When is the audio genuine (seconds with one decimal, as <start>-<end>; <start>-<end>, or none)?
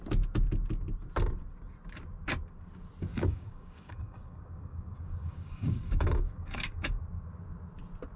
0.0-3.1; 7.0-8.2